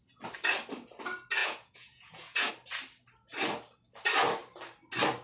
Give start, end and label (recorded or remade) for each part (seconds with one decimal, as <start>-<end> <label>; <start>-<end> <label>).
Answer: 0.0-1.4 recorded; 1.4-2.5 remade; 2.5-5.2 recorded

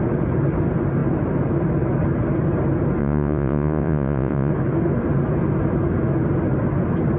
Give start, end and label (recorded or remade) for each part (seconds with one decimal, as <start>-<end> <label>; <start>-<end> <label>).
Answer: 0.0-3.0 recorded; 3.0-4.5 remade; 4.5-7.2 recorded